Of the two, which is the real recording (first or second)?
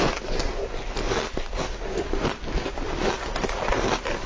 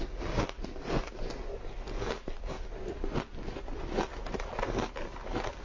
second